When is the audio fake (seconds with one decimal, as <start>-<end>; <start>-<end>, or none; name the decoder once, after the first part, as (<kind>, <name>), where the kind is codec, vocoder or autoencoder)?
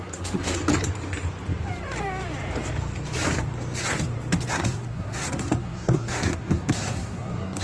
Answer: 0.0-0.6 (codec, SNAC); 4.5-7.6